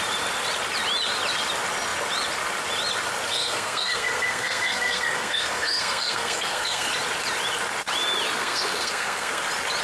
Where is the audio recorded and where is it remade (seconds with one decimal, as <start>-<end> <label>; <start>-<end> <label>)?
0.0-3.3 recorded; 3.3-6.9 remade; 6.9-8.4 recorded; 8.4-9.4 remade; 9.4-9.8 recorded